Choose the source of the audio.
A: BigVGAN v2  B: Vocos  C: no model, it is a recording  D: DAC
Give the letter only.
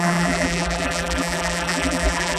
A